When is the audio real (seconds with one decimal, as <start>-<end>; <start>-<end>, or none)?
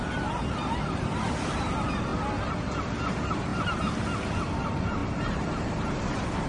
2.1-3.1; 3.5-4.6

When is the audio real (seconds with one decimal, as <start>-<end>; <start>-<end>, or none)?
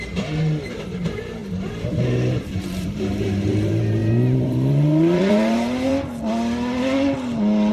5.9-7.7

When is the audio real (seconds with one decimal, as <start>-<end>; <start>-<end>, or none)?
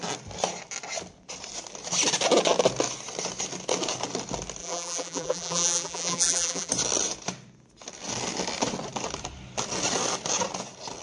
0.0-4.6; 6.7-11.0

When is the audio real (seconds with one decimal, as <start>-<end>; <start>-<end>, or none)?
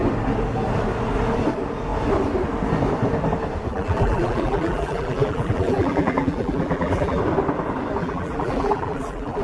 0.0-3.7; 7.2-8.0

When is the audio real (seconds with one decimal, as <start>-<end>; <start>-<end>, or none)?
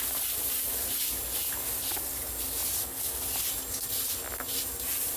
0.0-5.2